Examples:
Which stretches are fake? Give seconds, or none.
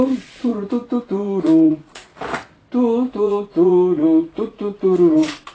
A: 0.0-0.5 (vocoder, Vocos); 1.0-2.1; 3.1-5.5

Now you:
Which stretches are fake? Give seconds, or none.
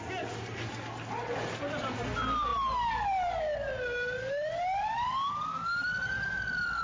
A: none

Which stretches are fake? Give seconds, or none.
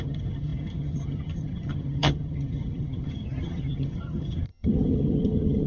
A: 0.0-5.7 (vocoder, HiFi-GAN)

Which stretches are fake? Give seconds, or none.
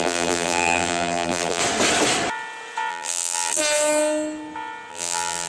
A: 0.0-1.6 (vocoder, BigVGAN v2); 2.9-3.6; 4.9-5.5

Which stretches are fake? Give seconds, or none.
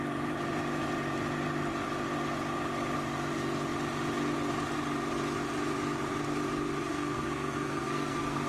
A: 6.9-8.5 (codec, SNAC)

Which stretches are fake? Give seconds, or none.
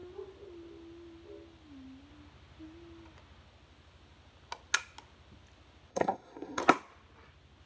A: 5.9-6.6 (codec, SNAC)